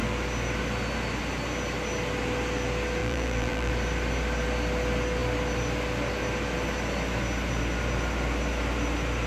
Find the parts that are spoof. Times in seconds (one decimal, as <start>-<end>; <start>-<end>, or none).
3.0-3.7